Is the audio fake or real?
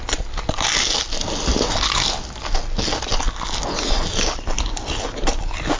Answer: real